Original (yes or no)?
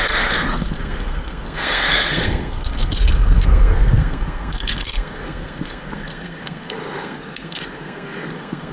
no